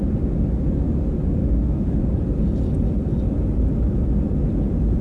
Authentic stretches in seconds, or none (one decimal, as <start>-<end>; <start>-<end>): 0.0-1.4; 2.0-5.0